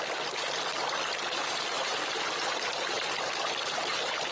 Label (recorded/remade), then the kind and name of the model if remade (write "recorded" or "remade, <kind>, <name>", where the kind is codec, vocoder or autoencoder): recorded